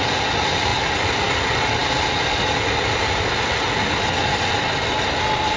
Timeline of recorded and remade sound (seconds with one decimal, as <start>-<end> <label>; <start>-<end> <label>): 0.0-5.6 recorded